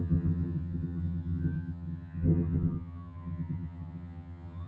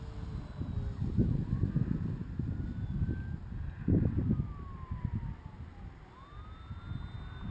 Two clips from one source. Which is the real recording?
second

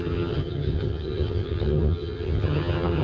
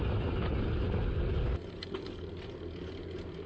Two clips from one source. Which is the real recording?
second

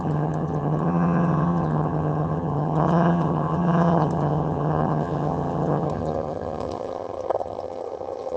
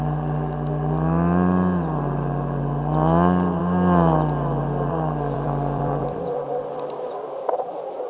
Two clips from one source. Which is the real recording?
second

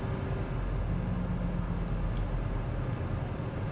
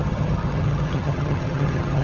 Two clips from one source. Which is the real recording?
first